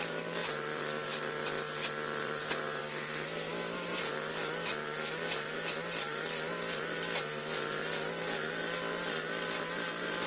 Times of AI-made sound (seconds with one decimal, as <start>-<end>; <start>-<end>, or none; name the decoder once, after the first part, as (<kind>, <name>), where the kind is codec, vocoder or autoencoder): 0.4-2.8 (vocoder, BigVGAN v2); 3.9-6.5